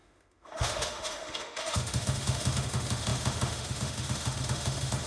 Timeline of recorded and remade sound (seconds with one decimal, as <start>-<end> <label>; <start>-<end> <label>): 0.0-5.1 remade